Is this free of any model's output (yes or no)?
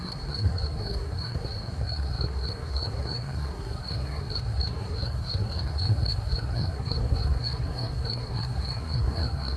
no